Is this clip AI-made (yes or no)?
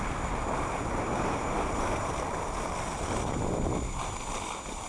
no